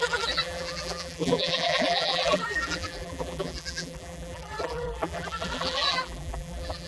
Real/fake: fake